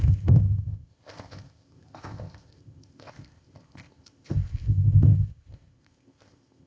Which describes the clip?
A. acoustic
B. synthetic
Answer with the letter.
B